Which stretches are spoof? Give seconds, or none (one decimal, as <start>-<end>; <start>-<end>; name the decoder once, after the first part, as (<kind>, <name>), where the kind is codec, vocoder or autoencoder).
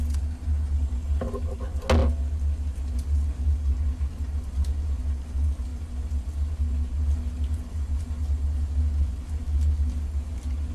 none